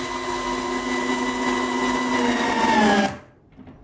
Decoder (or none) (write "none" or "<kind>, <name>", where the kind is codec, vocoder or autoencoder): none